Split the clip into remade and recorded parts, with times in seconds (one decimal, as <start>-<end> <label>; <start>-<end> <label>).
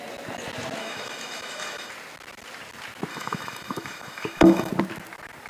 0.0-0.8 recorded; 0.8-1.9 remade; 1.9-3.1 recorded; 3.1-4.7 remade; 4.7-5.5 recorded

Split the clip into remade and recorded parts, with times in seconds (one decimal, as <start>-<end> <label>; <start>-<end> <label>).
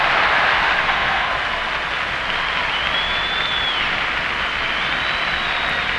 0.0-0.8 recorded; 0.8-1.3 remade; 1.3-6.0 recorded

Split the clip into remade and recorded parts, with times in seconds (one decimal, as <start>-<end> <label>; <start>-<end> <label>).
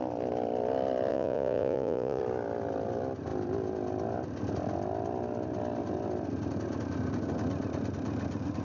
0.0-1.1 recorded; 1.1-2.2 remade; 2.2-8.6 recorded